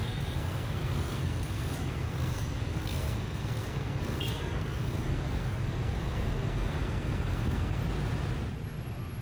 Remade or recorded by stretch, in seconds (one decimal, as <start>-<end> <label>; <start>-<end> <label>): 0.0-7.8 remade; 7.8-9.2 recorded